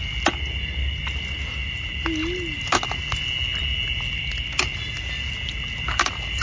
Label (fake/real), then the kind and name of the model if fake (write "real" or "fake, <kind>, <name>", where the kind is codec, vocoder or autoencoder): real